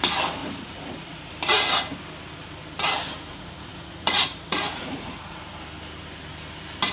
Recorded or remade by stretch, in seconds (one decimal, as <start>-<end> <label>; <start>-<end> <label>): 0.0-0.4 recorded; 0.4-1.3 remade; 1.3-3.3 recorded; 3.3-5.4 remade; 5.4-6.9 recorded